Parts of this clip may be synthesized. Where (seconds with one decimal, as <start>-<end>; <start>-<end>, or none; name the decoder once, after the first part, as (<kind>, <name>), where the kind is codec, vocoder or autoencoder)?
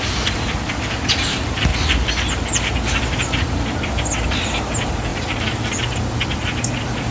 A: none